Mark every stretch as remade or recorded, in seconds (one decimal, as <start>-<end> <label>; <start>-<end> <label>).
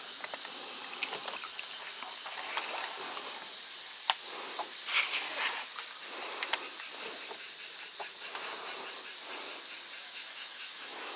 0.0-10.0 recorded; 10.0-11.2 remade